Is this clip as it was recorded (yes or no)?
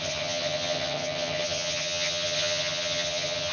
no